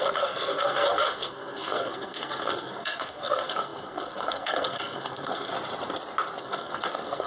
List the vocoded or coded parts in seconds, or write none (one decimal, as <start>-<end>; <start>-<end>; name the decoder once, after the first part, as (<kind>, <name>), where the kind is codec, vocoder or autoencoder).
0.0-5.5 (codec, SNAC); 6.4-7.3